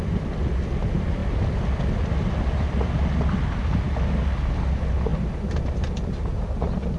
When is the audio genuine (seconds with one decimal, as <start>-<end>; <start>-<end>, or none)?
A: 0.0-7.0